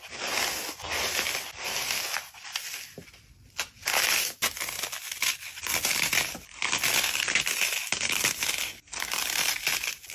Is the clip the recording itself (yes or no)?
yes